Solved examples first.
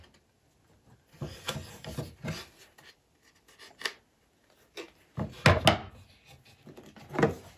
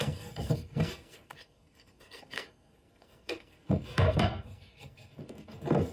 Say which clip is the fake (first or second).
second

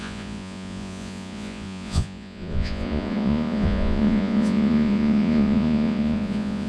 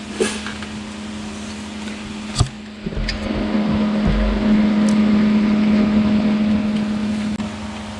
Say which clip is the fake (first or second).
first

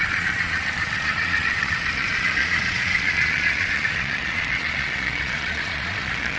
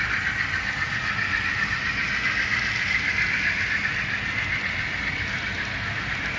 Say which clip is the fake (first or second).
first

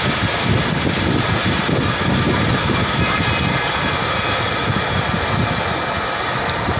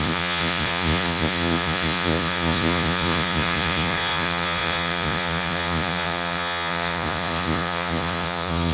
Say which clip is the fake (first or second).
second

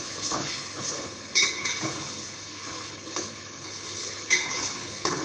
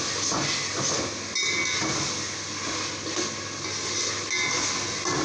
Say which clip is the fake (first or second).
first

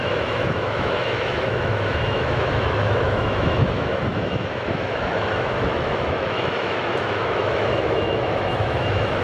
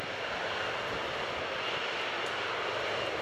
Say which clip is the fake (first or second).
first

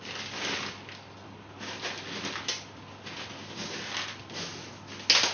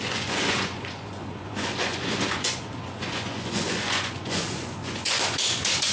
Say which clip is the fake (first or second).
second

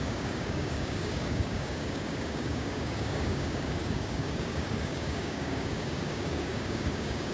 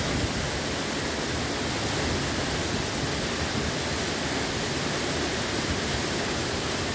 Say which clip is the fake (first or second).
first